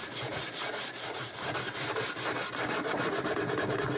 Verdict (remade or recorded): remade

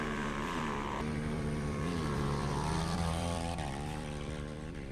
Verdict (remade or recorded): remade